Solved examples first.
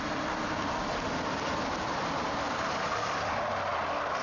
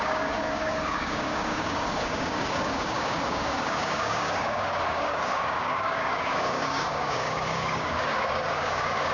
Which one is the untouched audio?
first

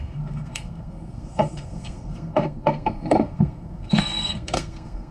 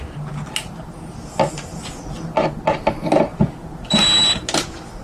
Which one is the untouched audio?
second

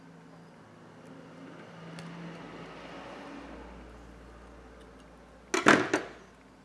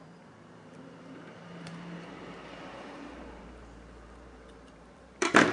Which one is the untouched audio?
first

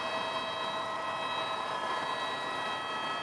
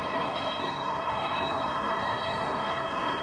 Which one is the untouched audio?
first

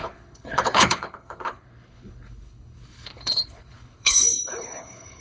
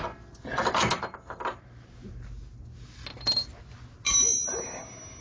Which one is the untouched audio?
second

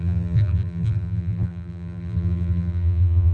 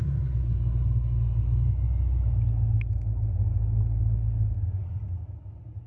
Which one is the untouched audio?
second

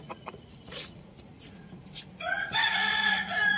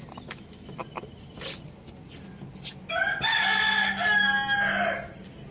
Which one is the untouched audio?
second